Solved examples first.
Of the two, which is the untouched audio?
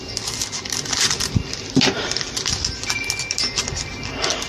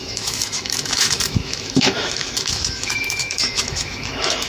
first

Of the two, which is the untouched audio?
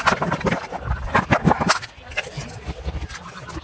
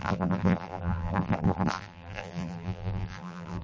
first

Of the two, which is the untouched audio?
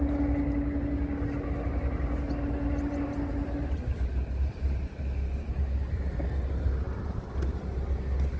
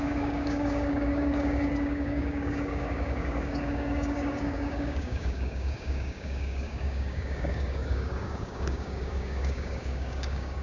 first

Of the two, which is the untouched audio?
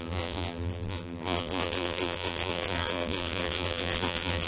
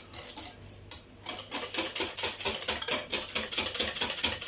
second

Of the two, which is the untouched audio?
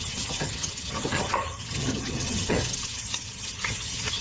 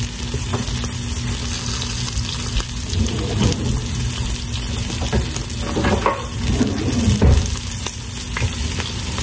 second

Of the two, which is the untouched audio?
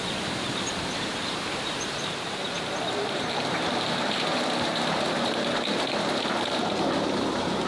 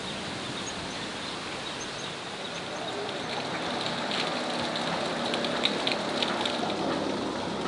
second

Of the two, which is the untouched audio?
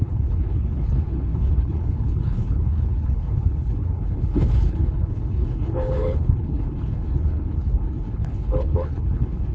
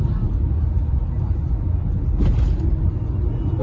second